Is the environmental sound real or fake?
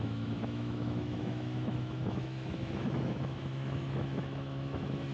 fake